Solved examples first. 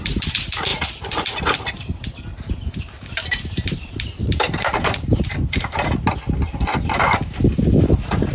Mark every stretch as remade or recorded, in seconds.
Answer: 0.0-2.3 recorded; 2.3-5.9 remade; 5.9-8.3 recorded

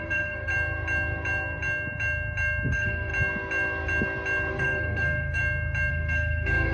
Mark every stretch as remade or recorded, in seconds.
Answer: 0.0-0.5 remade; 0.5-2.7 recorded; 2.7-3.1 remade; 3.1-4.5 recorded; 4.5-5.4 remade; 5.4-5.9 recorded; 5.9-6.7 remade

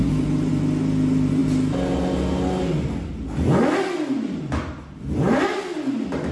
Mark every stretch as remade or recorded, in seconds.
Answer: 0.0-6.3 recorded

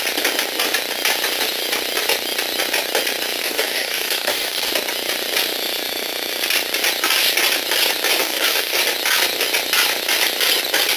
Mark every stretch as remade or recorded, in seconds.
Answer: 0.0-3.4 recorded; 3.4-4.7 remade; 4.7-8.2 recorded; 8.2-8.8 remade; 8.8-11.0 recorded

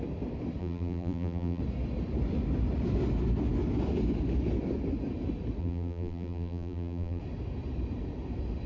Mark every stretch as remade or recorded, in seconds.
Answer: 0.0-0.6 recorded; 0.6-1.6 remade; 1.6-5.6 recorded; 5.6-7.2 remade; 7.2-8.7 recorded

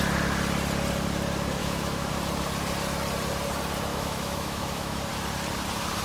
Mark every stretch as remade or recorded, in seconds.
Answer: 0.0-1.6 recorded; 1.6-2.1 remade; 2.1-3.9 recorded; 3.9-5.0 remade; 5.0-6.0 recorded

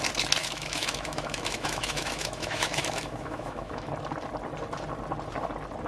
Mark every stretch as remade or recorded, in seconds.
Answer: 0.0-0.4 recorded; 0.4-3.9 remade; 3.9-5.9 recorded

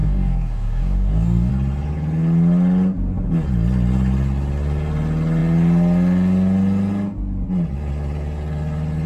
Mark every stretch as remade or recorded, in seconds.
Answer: 0.0-1.5 remade; 1.5-9.1 recorded